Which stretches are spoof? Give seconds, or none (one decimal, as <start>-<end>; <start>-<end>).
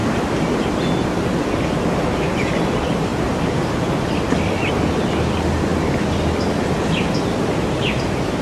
3.1-3.9